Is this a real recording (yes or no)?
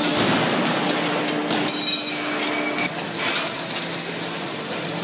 yes